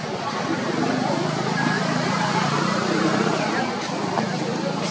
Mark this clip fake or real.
real